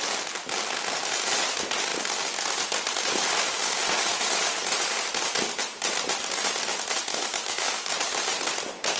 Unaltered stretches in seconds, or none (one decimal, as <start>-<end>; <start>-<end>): 0.0-7.1; 7.9-9.0